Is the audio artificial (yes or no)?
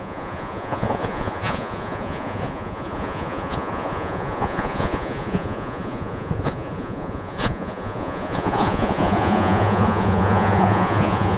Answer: yes